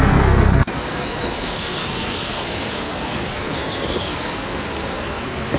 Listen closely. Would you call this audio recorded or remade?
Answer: remade